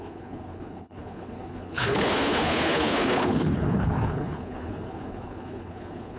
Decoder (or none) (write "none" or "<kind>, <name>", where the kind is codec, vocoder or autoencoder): codec, HILCodec